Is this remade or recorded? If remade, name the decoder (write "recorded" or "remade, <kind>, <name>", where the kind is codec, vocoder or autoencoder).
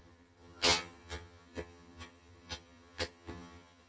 remade, vocoder, HiFi-GAN